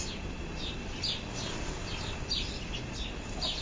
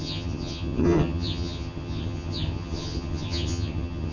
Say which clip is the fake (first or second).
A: second